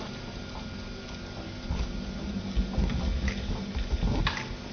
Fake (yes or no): no